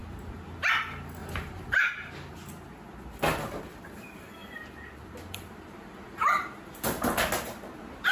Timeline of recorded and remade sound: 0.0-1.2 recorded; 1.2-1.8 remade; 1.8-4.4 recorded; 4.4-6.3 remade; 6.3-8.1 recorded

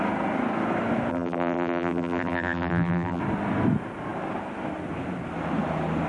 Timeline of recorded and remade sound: 0.0-1.1 recorded; 1.1-3.2 remade; 3.2-6.1 recorded

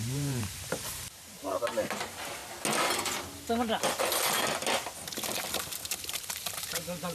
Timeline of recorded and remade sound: 0.0-2.4 remade; 2.4-5.4 recorded; 5.4-7.1 remade

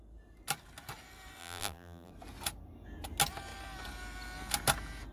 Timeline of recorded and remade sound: 0.0-1.4 recorded; 1.4-2.1 remade; 2.1-5.1 recorded

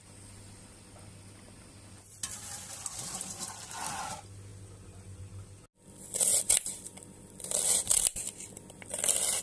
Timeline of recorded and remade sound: 0.0-6.3 recorded; 6.3-8.5 remade; 8.5-9.4 recorded

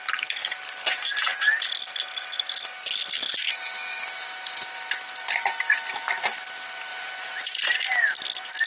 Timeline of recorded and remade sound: 0.0-0.4 recorded; 0.4-1.1 remade; 1.1-6.9 recorded; 6.9-7.4 remade; 7.4-8.7 recorded

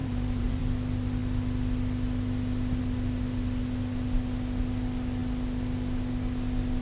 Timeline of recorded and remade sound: 0.0-0.6 remade; 0.6-6.8 recorded

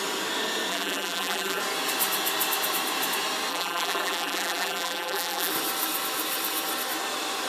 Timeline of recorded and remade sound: 0.0-0.7 recorded; 0.7-1.6 remade; 1.6-3.5 recorded; 3.5-5.5 remade; 5.5-7.5 recorded